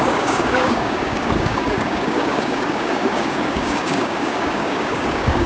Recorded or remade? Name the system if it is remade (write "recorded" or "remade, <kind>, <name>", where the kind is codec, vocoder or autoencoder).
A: remade, codec, DAC